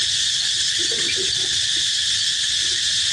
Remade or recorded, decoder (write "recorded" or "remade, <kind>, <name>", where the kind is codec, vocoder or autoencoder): recorded